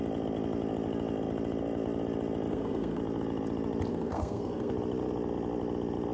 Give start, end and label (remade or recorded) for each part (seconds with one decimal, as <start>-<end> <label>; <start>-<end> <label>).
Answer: 0.0-2.5 recorded; 2.5-3.0 remade; 3.0-3.9 recorded; 3.9-4.7 remade; 4.7-6.1 recorded